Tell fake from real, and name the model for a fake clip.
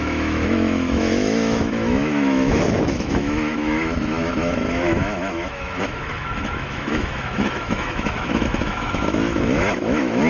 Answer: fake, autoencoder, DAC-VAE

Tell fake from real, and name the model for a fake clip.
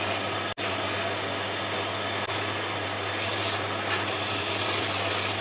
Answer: real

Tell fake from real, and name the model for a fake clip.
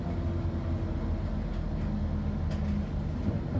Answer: real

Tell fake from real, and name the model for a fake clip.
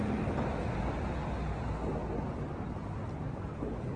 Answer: real